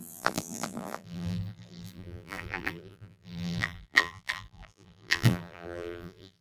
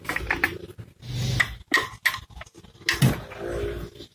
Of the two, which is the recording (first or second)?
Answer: second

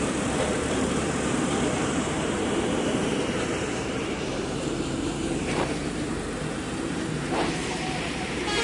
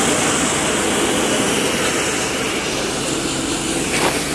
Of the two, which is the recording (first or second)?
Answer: second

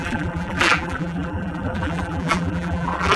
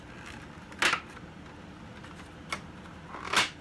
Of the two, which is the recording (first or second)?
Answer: second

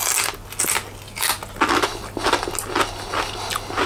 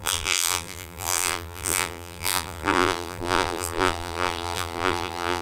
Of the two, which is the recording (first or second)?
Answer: first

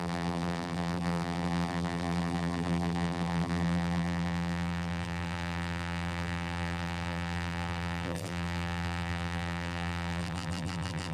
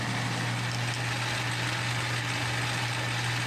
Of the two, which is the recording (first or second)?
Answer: second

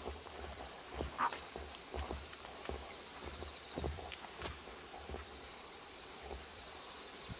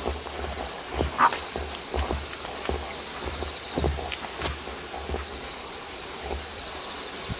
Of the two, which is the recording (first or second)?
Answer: second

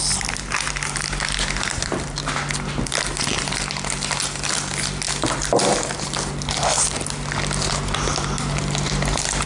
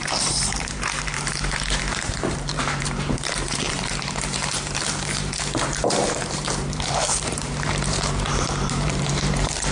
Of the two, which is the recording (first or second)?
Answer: first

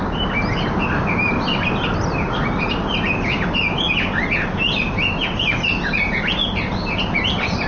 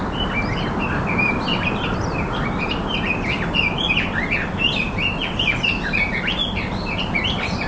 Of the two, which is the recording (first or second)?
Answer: first